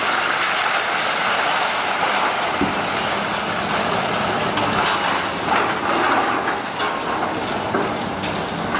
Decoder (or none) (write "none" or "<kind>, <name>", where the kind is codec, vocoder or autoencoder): none